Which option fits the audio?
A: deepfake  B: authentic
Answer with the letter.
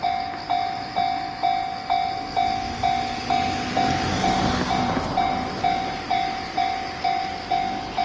B